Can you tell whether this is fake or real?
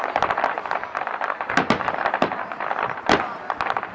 real